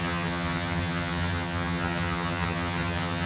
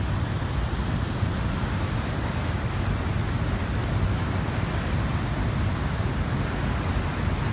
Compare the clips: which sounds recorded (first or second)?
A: second